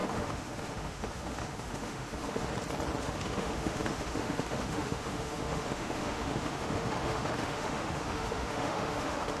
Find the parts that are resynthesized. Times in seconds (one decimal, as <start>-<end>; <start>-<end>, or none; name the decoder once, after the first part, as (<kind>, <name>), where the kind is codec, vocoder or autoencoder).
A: 0.0-2.5 (autoencoder, DAC-VAE); 3.0-9.4